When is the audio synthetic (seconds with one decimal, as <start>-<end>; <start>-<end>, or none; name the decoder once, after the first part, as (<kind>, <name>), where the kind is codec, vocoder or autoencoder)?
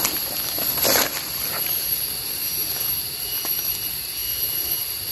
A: 0.0-2.4 (vocoder, BigVGAN v2); 3.5-5.1